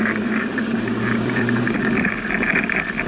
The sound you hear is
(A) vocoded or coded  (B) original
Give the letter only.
B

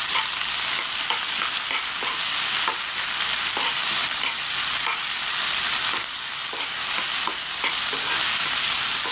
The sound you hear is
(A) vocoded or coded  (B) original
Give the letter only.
A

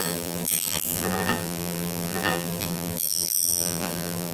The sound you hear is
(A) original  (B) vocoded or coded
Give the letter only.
B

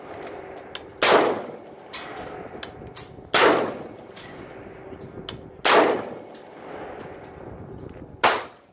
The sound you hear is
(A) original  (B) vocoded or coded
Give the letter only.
A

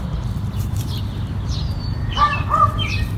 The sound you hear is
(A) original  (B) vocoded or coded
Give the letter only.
A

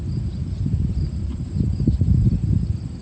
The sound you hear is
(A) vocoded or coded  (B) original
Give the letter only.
B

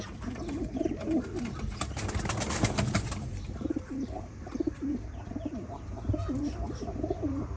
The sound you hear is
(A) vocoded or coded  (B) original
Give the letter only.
A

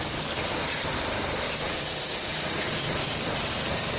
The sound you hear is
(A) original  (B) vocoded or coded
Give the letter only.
B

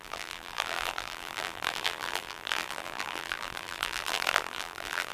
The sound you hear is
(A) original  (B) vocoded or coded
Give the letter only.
B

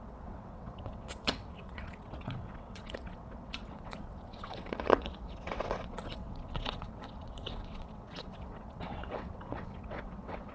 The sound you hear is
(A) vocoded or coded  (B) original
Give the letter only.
A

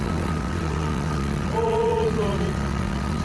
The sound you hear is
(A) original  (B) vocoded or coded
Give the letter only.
B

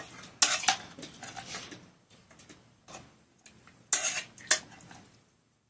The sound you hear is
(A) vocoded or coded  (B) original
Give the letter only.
B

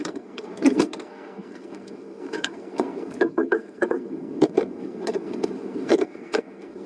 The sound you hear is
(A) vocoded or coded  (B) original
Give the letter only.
A